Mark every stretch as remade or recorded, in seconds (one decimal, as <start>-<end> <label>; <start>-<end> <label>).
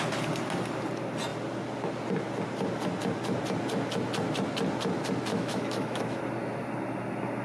0.0-5.3 recorded; 5.3-6.2 remade; 6.2-7.4 recorded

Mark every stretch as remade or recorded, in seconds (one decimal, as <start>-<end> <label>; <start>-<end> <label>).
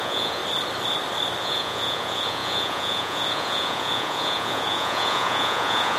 0.0-0.4 remade; 0.4-1.4 recorded; 1.4-6.0 remade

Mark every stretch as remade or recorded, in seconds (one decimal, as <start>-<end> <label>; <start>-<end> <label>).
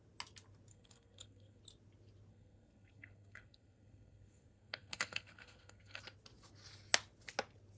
0.0-0.7 recorded; 0.7-1.6 remade; 1.6-2.3 recorded; 2.3-6.0 remade; 6.0-7.8 recorded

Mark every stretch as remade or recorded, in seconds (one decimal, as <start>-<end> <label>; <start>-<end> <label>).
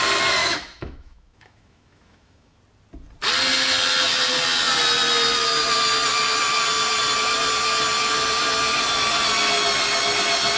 0.0-0.4 recorded; 0.4-2.6 remade; 2.6-10.6 recorded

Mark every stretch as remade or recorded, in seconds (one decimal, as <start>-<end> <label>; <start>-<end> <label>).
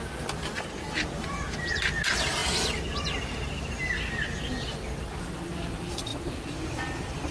0.0-7.3 recorded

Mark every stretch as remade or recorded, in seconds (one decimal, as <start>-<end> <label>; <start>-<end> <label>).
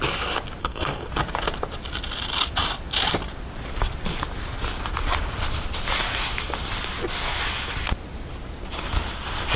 0.0-0.6 recorded; 0.6-1.1 remade; 1.1-9.6 recorded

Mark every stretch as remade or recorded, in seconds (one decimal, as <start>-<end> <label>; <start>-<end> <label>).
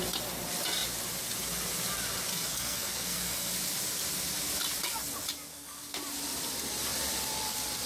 0.0-2.3 recorded; 2.3-3.5 remade; 3.5-5.5 recorded; 5.5-6.0 remade; 6.0-7.9 recorded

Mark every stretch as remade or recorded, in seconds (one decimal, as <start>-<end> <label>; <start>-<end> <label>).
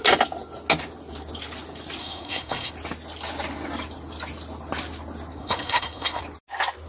0.0-2.0 recorded; 2.0-2.7 remade; 2.7-5.4 recorded; 5.4-6.2 remade; 6.2-6.9 recorded